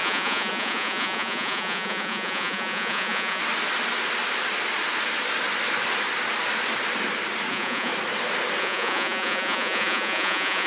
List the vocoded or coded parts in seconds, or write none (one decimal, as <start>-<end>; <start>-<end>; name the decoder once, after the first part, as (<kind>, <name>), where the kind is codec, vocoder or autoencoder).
0.0-3.4 (vocoder, Vocos); 7.5-7.9; 8.6-10.7